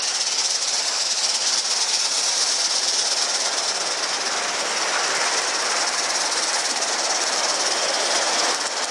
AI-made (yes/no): no